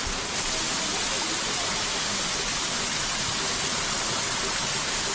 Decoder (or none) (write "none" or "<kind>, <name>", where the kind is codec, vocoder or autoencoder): none